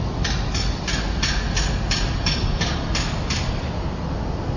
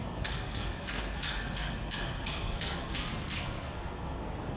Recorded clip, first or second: first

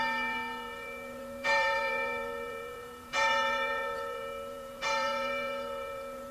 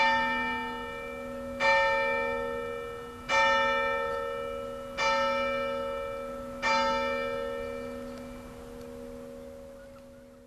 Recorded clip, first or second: second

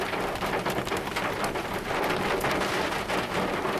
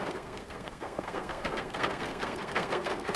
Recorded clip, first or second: first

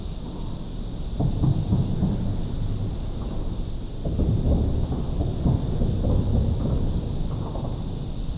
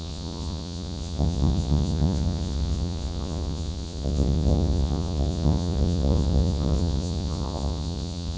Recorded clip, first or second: first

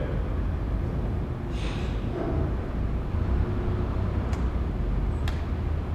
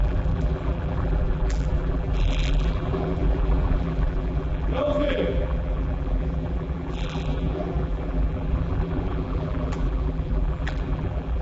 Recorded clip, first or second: first